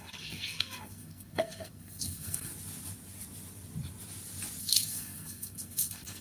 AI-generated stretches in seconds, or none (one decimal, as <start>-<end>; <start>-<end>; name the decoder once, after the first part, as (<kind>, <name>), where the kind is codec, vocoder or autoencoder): 0.0-2.5 (codec, SNAC); 4.6-6.2